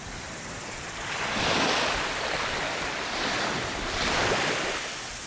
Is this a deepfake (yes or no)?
yes